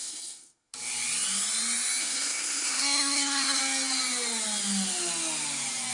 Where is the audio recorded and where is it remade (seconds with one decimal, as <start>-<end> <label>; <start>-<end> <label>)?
0.0-0.7 remade; 0.7-2.0 recorded; 2.0-3.6 remade; 3.6-5.9 recorded